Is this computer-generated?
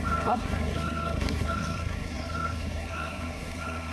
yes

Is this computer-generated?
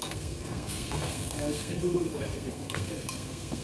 yes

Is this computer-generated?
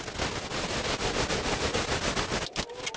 no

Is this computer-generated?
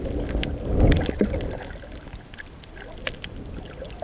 no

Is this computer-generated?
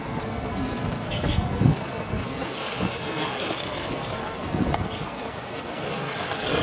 yes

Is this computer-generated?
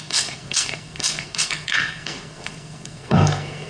yes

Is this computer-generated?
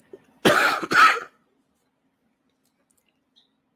no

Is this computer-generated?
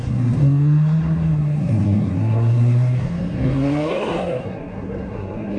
yes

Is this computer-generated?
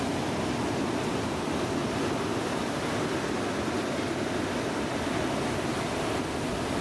no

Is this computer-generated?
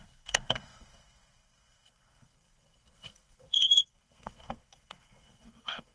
yes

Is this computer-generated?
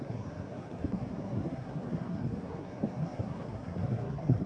yes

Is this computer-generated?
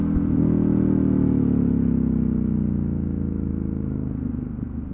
no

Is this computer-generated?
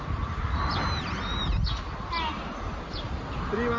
no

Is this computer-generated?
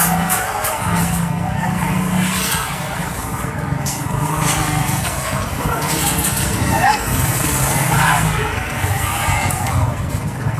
yes